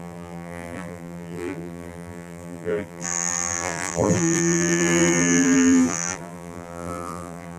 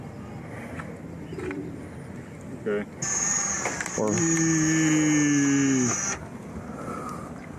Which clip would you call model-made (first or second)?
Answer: first